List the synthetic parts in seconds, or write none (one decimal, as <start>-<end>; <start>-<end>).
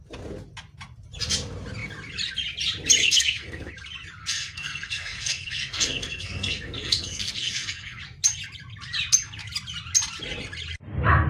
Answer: 3.0-3.7; 4.2-8.0